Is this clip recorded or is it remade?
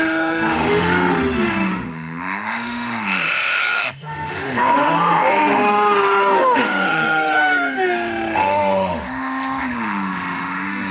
remade